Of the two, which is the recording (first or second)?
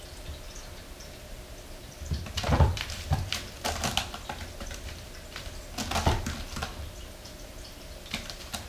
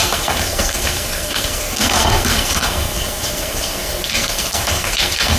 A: first